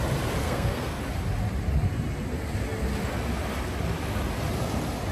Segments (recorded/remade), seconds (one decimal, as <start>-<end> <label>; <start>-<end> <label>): 0.0-0.4 recorded; 0.4-1.0 remade; 1.0-5.1 recorded